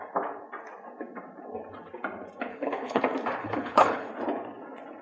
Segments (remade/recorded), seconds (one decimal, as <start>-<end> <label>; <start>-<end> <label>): 0.0-2.5 recorded; 2.5-3.0 remade; 3.0-3.4 recorded; 3.4-4.1 remade; 4.1-5.0 recorded